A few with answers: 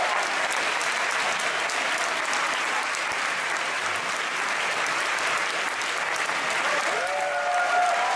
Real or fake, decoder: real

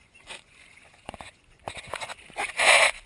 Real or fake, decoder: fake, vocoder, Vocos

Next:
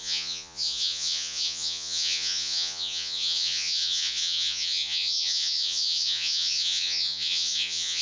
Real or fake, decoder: fake, vocoder, Vocos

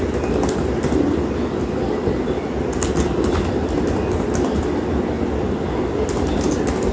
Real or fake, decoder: real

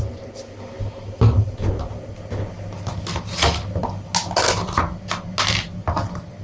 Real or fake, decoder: real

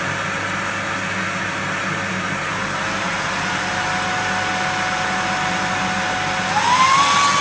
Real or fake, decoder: real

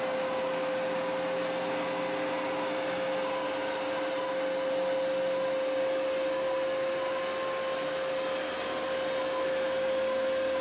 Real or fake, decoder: real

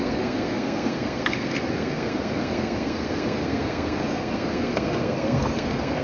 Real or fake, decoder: fake, codec, SNAC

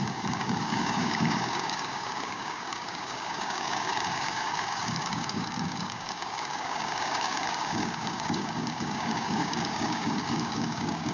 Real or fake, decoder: fake, codec, DAC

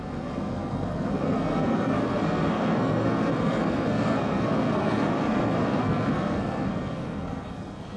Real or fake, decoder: fake, codec, SNAC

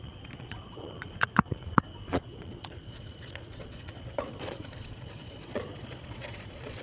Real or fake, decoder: fake, vocoder, Vocos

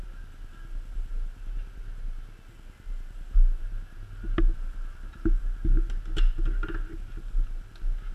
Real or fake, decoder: real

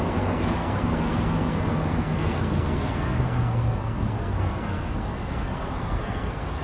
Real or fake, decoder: fake, codec, SNAC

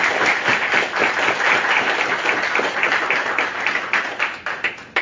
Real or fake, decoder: real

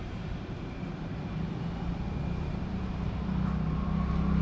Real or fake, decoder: real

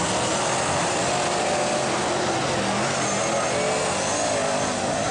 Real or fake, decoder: real